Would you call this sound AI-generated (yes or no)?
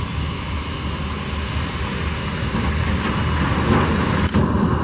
no